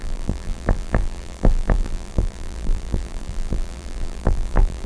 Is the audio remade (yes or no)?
yes